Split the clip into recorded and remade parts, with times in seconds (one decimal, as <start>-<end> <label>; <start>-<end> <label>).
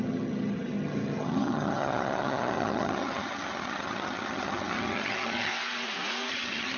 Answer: 0.0-5.5 remade; 5.5-6.3 recorded; 6.3-6.8 remade